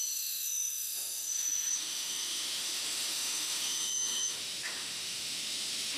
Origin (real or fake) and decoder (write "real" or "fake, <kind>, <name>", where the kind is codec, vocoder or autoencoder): fake, autoencoder, DAC-VAE